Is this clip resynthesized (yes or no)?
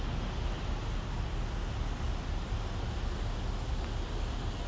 no